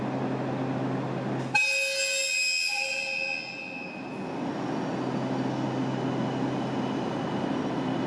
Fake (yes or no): no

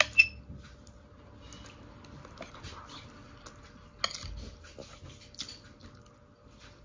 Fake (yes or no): no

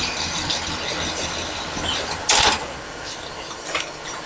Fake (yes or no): no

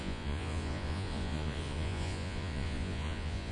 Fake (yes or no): yes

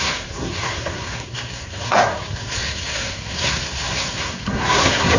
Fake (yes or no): yes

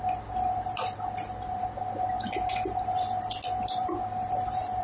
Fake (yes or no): yes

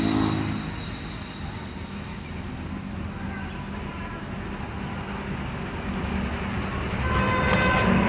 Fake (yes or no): no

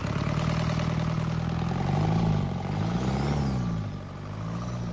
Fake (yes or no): no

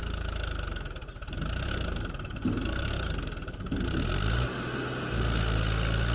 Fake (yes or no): no